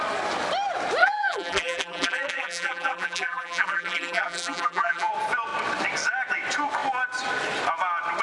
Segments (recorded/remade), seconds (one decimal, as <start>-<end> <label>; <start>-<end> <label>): 0.0-1.0 recorded; 1.0-5.1 remade; 5.1-8.2 recorded